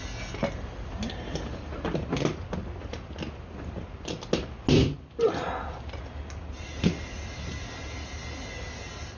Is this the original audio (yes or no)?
yes